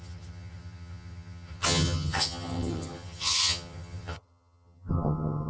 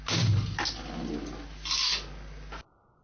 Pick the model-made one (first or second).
first